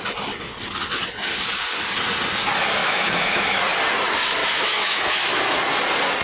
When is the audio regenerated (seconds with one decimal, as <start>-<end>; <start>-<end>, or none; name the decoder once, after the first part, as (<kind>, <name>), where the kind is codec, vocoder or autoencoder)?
2.8-3.6 (autoencoder, DAC-VAE); 4.4-5.4